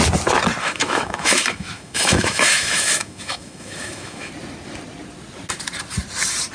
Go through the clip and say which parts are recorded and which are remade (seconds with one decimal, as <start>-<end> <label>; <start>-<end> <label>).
0.0-0.6 recorded; 0.6-4.3 remade; 4.3-6.5 recorded